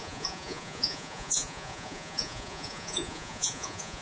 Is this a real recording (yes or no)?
no